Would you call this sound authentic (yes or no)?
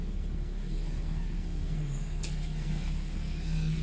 no